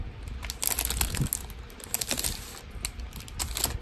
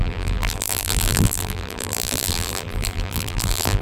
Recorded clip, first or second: first